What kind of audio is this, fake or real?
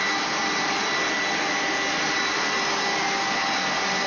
real